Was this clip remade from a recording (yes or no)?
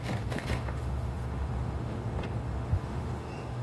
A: yes